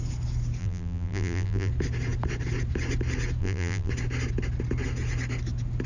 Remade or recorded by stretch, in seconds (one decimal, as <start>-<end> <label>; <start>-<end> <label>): 0.0-0.6 recorded; 0.6-1.7 remade; 1.7-3.4 recorded; 3.4-3.9 remade; 3.9-5.9 recorded